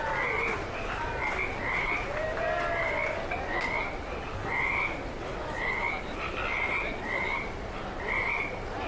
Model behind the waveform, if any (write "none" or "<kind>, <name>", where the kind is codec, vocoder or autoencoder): none